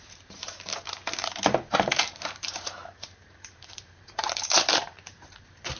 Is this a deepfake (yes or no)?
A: yes